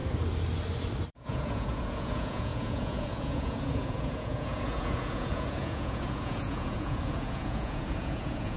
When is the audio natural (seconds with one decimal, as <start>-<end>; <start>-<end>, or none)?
0.0-1.1